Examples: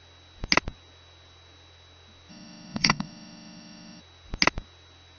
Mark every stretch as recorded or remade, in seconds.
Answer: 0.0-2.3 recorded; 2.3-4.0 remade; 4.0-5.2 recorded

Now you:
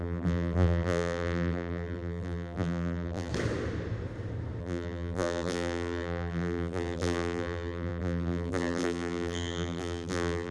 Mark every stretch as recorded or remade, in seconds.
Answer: 0.0-3.3 remade; 3.3-4.6 recorded; 4.6-10.5 remade

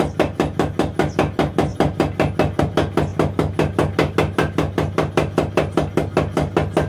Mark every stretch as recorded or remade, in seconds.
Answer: 0.0-6.9 recorded

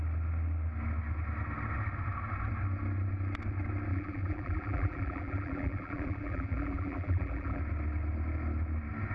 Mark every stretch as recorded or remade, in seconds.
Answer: 0.0-3.9 recorded; 3.9-7.6 remade; 7.6-9.1 recorded

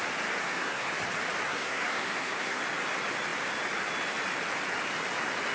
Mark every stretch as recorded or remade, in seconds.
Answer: 0.0-0.4 recorded; 0.4-0.9 remade; 0.9-1.5 recorded; 1.5-2.6 remade; 2.6-5.5 recorded

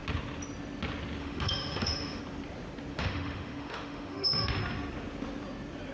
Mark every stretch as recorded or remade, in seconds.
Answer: 0.0-1.2 recorded; 1.2-2.2 remade; 2.2-2.9 recorded; 2.9-4.5 remade; 4.5-5.9 recorded